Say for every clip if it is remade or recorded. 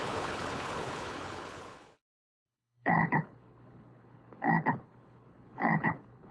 remade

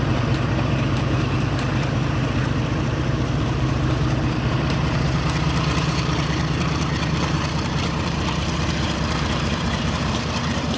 remade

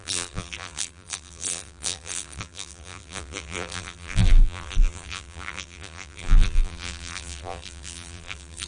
remade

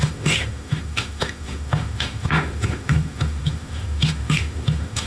remade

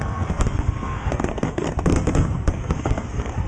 remade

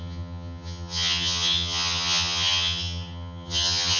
remade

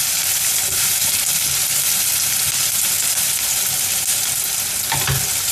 recorded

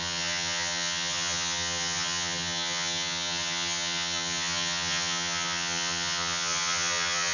remade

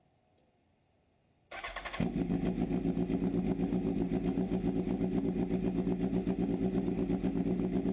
recorded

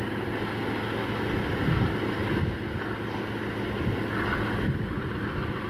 recorded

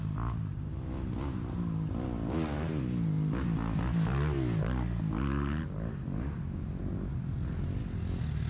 recorded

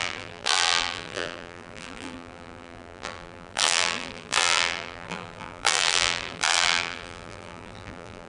remade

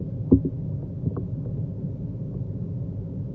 recorded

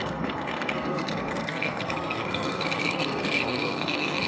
remade